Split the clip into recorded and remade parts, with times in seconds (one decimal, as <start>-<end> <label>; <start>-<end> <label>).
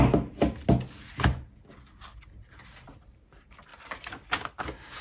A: 0.0-5.0 recorded